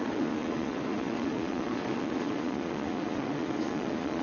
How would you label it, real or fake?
fake